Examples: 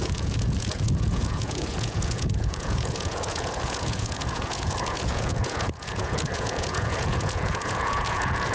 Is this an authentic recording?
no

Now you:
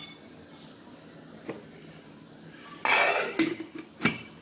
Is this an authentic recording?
yes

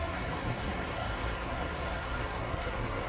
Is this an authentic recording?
no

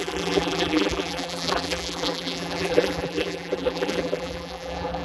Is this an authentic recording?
no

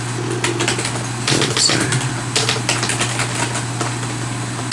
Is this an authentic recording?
yes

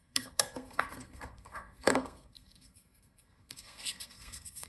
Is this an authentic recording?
no